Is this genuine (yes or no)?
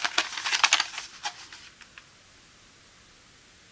yes